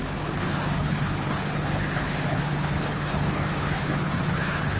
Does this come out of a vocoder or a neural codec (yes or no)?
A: yes